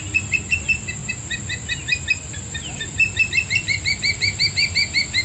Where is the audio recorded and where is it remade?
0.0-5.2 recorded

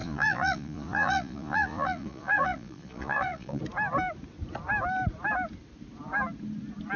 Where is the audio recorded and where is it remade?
0.0-3.6 remade; 3.6-7.0 recorded

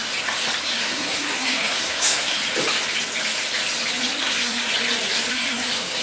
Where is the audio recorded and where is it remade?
0.0-0.6 recorded; 0.6-2.4 remade; 2.4-4.2 recorded; 4.2-4.7 remade; 4.7-5.3 recorded; 5.3-6.0 remade

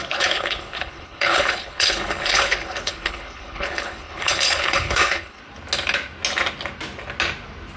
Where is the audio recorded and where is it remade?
0.0-5.4 remade; 5.4-7.8 recorded